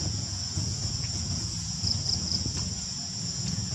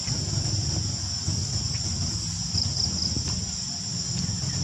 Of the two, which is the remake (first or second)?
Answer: first